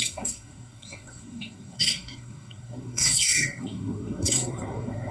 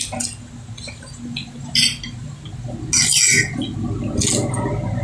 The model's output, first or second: first